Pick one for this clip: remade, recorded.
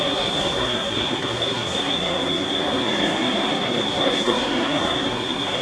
remade